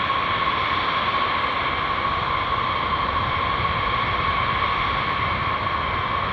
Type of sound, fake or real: real